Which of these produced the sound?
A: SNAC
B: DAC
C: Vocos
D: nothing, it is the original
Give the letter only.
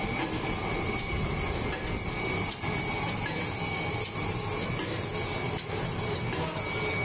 D